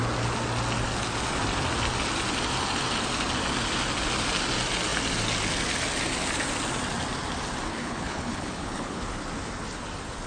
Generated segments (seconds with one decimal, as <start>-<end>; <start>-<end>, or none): 7.7-9.0